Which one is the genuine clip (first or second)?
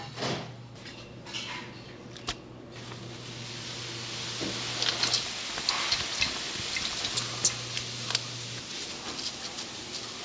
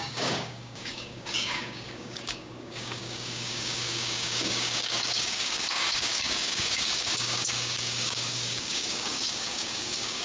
first